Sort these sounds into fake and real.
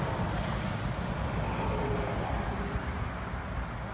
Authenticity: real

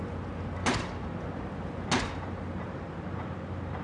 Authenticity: real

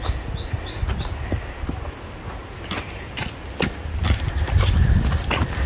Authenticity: real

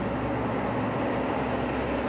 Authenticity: real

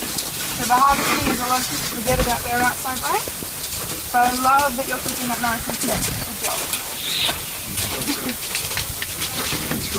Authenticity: real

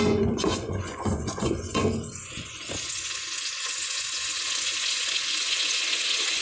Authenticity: fake